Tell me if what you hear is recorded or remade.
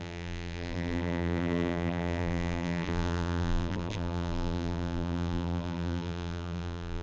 remade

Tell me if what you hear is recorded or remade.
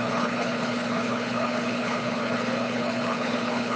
remade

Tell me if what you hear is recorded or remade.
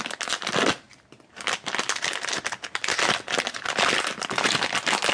recorded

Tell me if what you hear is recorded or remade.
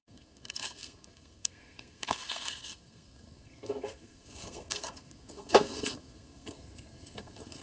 remade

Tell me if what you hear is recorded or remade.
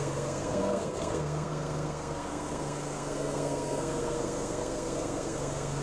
remade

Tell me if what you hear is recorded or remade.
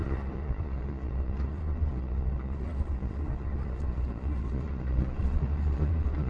remade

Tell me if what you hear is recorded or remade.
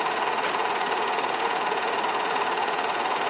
remade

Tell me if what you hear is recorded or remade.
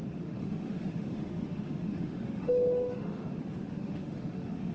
remade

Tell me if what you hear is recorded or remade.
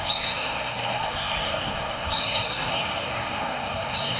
remade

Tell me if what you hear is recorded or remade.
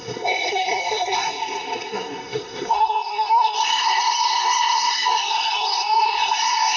remade